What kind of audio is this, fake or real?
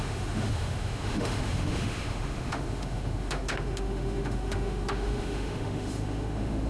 fake